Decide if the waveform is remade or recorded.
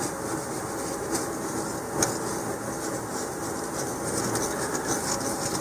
recorded